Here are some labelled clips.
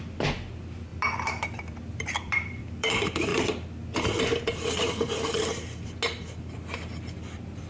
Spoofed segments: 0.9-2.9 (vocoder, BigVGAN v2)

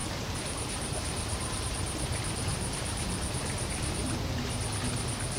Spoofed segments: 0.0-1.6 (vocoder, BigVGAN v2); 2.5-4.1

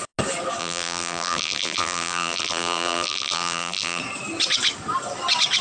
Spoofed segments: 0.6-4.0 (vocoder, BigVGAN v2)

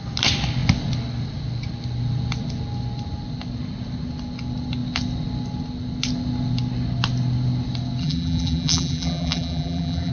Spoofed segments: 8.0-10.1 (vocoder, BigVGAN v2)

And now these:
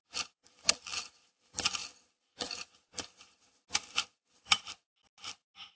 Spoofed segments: none